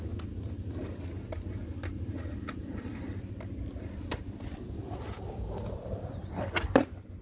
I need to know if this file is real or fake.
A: real